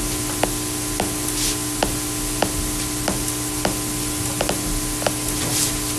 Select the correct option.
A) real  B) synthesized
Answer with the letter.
A